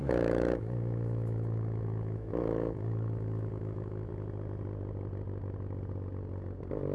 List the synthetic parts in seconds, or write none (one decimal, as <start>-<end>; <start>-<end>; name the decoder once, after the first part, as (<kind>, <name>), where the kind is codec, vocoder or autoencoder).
0.0-4.1 (autoencoder, DAC-VAE)